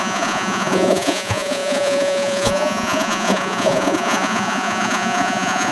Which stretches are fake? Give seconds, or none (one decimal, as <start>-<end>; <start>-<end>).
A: 0.0-5.7